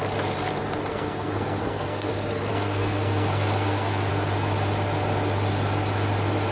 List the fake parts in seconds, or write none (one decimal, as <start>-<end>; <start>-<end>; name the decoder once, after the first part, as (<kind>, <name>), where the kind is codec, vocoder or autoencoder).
0.9-2.1 (codec, SNAC); 2.5-4.1